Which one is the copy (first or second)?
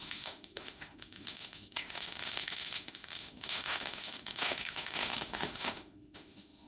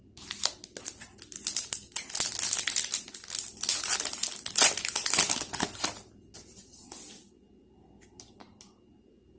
first